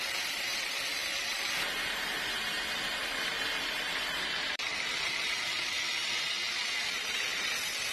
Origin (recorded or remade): remade